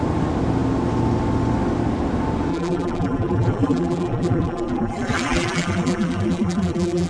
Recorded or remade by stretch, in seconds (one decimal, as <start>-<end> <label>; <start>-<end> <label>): 0.0-2.5 recorded; 2.5-7.1 remade